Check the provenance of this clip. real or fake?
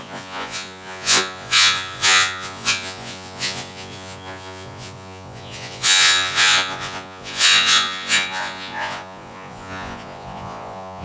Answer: fake